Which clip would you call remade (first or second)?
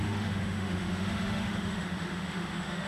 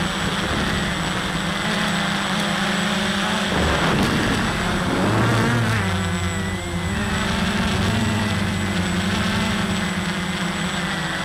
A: first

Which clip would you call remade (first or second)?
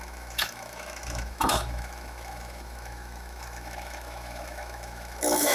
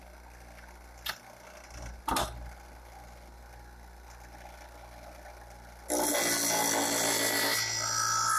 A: first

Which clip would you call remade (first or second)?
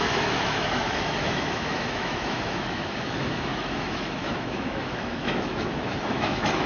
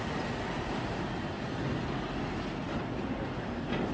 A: first